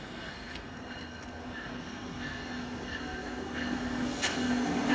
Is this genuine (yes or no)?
no